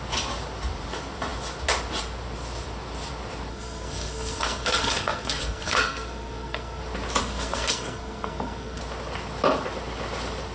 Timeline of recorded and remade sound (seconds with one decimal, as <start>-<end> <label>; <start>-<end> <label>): 0.0-3.5 recorded; 3.5-6.8 remade; 6.8-7.2 recorded; 7.2-8.8 remade; 8.8-10.5 recorded